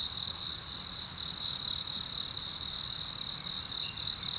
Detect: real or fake real